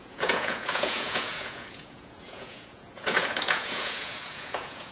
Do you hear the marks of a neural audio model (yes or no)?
yes